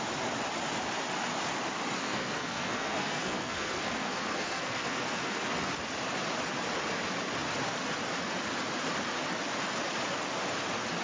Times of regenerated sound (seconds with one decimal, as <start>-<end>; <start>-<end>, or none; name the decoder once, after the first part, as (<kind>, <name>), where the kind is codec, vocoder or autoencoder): 2.0-5.7 (codec, SNAC)